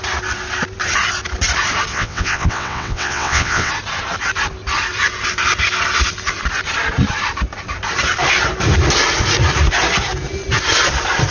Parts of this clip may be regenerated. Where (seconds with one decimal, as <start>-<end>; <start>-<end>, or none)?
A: 1.9-3.7